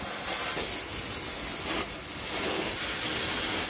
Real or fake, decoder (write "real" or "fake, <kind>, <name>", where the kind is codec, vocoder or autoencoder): real